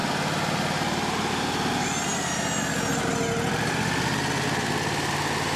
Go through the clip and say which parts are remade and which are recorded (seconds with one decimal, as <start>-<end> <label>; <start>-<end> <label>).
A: 0.0-5.6 recorded